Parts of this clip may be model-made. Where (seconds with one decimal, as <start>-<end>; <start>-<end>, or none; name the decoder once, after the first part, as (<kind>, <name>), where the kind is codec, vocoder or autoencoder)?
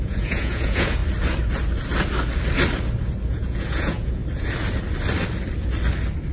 0.0-1.0 (vocoder, Vocos); 3.3-4.2